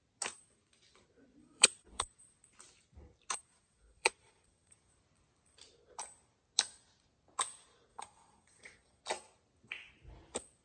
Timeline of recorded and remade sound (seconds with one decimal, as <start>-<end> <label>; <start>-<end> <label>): 0.0-1.4 recorded; 1.4-2.2 remade; 2.2-3.4 recorded; 3.4-4.9 remade; 4.9-7.9 recorded; 7.9-9.0 remade; 9.0-10.6 recorded